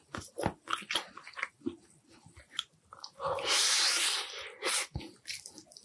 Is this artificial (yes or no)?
no